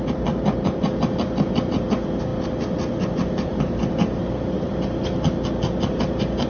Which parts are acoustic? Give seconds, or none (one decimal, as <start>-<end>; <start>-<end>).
0.0-3.5; 4.7-6.5